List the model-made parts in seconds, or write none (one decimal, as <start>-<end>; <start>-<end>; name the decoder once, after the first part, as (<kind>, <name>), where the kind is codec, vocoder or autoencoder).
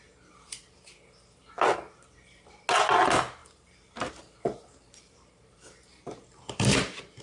3.4-7.2 (vocoder, BigVGAN v2)